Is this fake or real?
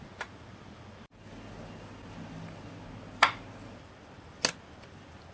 real